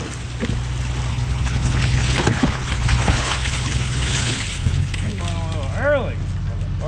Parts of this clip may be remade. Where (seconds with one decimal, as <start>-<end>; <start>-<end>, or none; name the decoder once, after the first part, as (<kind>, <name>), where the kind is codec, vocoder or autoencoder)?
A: 1.1-5.2 (codec, HILCodec)